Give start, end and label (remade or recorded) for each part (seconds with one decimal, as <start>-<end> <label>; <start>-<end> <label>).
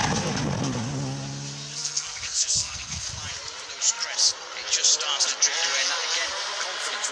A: 0.0-1.8 recorded; 1.8-3.1 remade; 3.1-7.1 recorded